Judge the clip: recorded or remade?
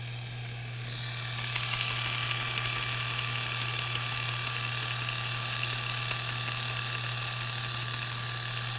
recorded